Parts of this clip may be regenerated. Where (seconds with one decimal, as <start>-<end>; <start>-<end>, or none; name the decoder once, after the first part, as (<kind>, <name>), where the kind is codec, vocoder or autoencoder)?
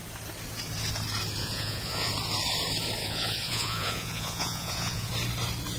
1.4-2.1 (vocoder, Vocos); 3.0-5.1